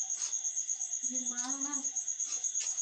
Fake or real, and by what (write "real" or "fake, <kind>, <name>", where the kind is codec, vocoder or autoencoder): real